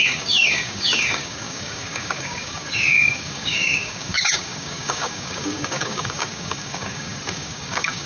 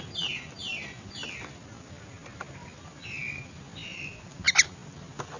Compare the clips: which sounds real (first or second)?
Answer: second